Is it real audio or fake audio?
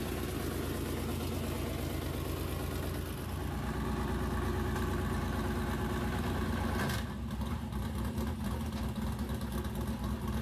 real